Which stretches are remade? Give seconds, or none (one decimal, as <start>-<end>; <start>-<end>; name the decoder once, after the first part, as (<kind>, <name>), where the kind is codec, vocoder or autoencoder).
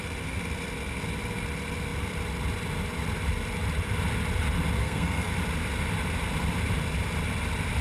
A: 4.8-5.3 (codec, SNAC)